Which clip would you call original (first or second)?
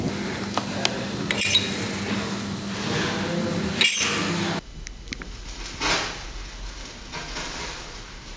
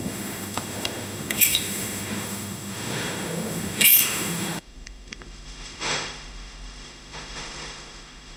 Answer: first